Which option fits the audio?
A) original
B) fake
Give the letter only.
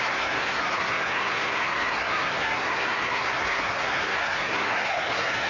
B